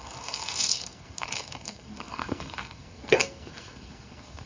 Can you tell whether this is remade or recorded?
remade